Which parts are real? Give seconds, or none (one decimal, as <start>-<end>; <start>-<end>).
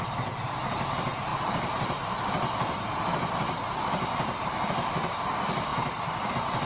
0.0-6.7